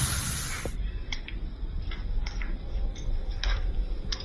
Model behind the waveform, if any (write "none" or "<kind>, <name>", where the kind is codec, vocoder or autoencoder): none